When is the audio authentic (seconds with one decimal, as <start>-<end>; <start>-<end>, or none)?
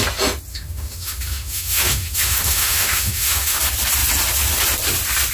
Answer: 0.0-0.5; 3.6-5.3